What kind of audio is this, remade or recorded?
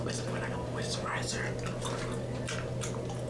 recorded